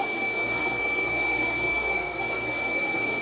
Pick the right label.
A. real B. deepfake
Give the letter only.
B